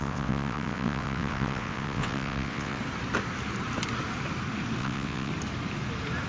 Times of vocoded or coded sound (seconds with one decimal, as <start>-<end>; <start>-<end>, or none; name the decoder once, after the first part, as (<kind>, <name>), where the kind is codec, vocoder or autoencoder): 0.0-2.8 (vocoder, WaveNeXt); 4.8-5.3